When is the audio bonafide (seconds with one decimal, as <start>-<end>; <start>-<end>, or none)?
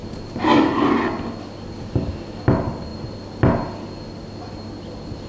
0.0-5.3